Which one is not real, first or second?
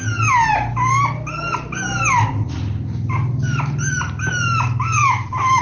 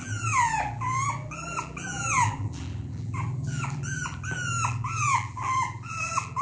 second